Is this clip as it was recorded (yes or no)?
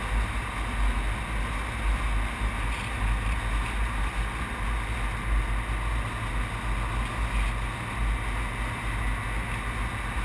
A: yes